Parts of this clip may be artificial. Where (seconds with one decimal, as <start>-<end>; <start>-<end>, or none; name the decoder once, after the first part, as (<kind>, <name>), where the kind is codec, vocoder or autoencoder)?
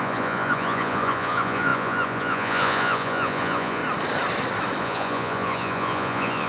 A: 0.0-3.8 (vocoder, Vocos); 4.8-6.5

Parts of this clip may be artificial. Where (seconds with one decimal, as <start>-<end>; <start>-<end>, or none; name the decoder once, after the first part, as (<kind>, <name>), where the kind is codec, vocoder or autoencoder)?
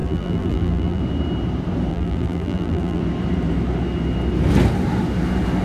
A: 0.0-1.0 (vocoder, BigVGAN v2); 1.9-3.0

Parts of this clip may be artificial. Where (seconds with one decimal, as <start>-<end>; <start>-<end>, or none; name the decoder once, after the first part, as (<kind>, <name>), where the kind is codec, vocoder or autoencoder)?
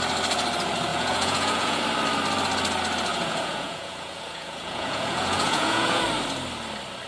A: 0.9-1.8 (vocoder, Vocos); 3.1-6.0